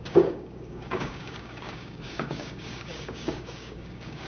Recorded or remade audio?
remade